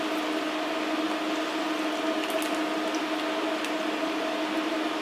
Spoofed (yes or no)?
no